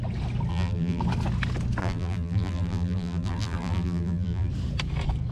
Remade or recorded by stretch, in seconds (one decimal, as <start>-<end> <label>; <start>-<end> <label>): 0.0-0.5 recorded; 0.5-1.0 remade; 1.0-1.8 recorded; 1.8-4.5 remade; 4.5-5.3 recorded

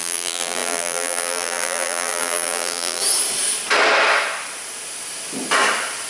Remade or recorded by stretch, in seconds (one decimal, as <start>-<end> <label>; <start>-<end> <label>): 0.0-3.0 remade; 3.0-6.1 recorded

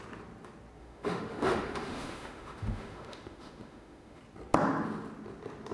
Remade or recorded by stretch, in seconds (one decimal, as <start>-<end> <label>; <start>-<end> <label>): 0.0-0.8 recorded; 0.8-4.2 remade; 4.2-5.7 recorded

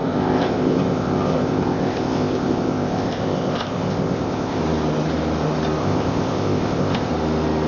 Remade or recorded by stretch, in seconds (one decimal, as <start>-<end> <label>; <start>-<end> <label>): 0.0-4.6 remade; 4.6-5.8 recorded; 5.8-7.1 remade; 7.1-7.7 recorded

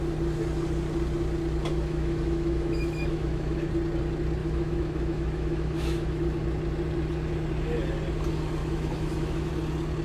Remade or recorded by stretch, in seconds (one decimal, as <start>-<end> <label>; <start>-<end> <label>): 0.0-1.7 recorded; 1.7-3.7 remade; 3.7-4.4 recorded; 4.4-6.2 remade; 6.2-8.6 recorded; 8.6-9.5 remade; 9.5-10.0 recorded

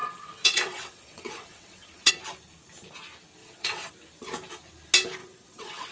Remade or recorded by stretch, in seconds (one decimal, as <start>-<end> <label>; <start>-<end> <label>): 0.0-2.1 remade; 2.1-3.4 recorded; 3.4-3.9 remade; 3.9-5.2 recorded; 5.2-5.9 remade

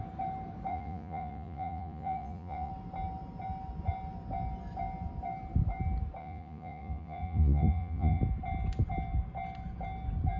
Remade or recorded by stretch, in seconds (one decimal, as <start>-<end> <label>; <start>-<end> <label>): 0.0-0.7 recorded; 0.7-2.7 remade; 2.7-6.2 recorded; 6.2-8.2 remade; 8.2-10.4 recorded

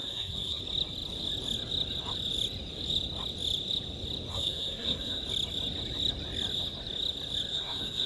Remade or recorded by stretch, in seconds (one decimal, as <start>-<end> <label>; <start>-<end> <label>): 0.0-0.6 remade; 0.6-4.3 recorded; 4.3-5.2 remade; 5.2-7.5 recorded; 7.5-8.1 remade